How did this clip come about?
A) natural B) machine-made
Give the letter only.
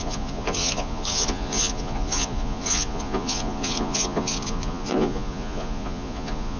B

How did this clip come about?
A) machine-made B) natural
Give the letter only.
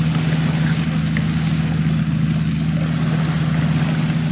B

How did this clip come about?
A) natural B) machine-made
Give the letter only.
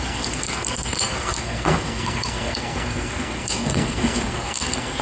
B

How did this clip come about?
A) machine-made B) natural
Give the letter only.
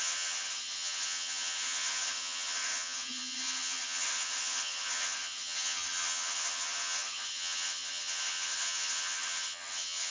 A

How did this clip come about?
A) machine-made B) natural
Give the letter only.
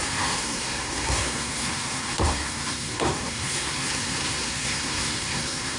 A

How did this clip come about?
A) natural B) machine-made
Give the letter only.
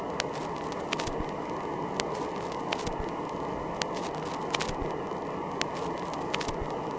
A